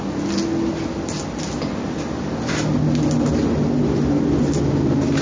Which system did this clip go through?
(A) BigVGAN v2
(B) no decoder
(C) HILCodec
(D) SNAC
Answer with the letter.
B